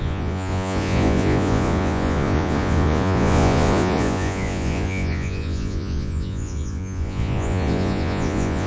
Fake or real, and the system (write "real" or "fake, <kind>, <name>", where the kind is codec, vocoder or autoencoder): fake, vocoder, Vocos